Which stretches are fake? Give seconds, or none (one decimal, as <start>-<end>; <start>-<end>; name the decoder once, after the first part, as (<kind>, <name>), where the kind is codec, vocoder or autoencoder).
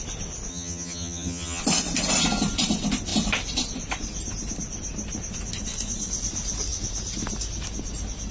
0.5-1.6 (vocoder, HiFi-GAN)